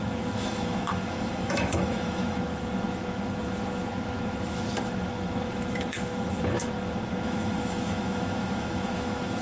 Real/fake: fake